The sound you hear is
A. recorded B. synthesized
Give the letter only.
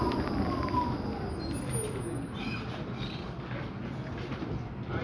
A